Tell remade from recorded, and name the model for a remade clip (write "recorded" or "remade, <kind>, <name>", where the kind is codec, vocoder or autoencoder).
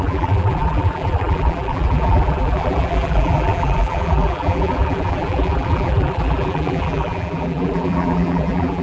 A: remade, vocoder, BigVGAN v2